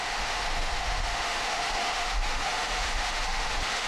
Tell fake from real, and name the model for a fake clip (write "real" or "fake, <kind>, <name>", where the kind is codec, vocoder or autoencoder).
fake, autoencoder, DAC-VAE